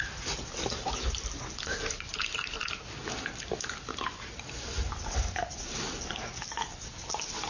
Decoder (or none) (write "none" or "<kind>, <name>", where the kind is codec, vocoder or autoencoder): none